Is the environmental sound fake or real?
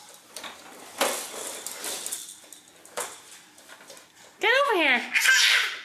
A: real